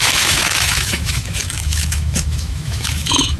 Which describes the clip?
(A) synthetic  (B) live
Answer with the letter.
A